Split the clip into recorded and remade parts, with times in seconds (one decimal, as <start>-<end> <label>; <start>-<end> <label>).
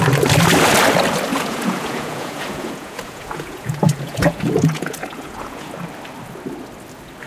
0.0-1.3 recorded; 1.3-5.7 remade; 5.7-7.3 recorded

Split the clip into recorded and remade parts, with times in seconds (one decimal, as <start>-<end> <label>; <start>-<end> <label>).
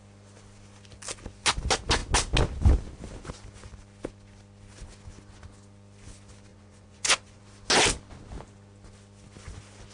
0.0-6.5 recorded; 6.5-7.4 remade; 7.4-9.9 recorded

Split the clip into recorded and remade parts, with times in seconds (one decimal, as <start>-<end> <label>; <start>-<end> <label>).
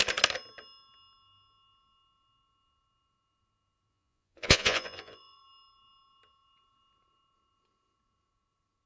0.0-3.9 recorded; 3.9-5.4 remade; 5.4-8.9 recorded